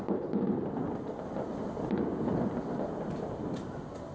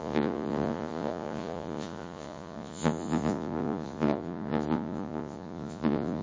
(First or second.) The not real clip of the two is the second